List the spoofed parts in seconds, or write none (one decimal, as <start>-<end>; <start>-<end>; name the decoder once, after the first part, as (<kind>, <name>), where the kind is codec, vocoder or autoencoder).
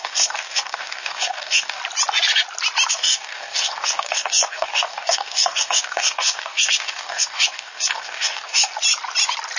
0.0-1.8 (codec, DAC); 2.9-8.7